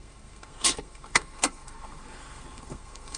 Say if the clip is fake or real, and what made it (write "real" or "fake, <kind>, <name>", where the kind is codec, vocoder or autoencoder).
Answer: fake, codec, SNAC